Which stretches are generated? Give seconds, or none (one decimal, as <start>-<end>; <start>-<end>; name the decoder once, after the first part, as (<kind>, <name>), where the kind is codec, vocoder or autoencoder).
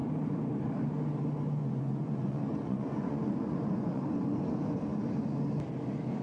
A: 1.6-4.0 (vocoder, Vocos)